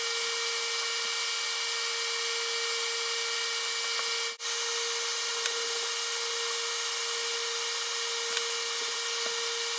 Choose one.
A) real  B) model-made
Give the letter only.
A